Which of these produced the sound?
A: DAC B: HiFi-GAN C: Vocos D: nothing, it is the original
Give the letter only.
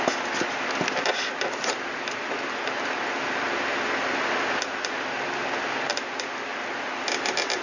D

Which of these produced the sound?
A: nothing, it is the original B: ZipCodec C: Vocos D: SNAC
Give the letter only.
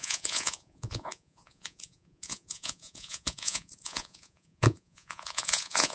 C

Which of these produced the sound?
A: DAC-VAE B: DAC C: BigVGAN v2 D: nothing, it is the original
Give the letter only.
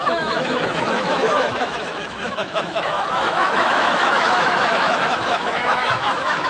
A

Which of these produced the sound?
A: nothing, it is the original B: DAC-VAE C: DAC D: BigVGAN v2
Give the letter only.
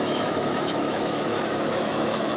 B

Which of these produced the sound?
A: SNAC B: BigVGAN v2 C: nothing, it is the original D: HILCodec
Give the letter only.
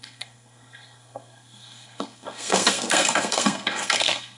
A